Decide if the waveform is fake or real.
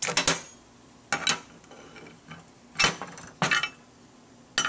real